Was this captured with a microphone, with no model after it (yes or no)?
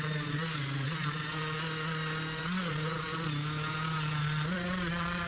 yes